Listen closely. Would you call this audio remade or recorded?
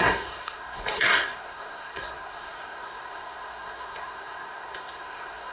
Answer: remade